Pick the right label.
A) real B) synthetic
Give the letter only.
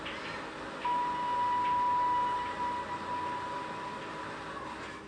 A